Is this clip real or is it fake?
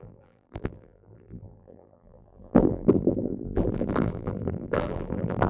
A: fake